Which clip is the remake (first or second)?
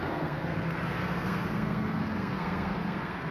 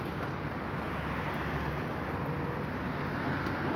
first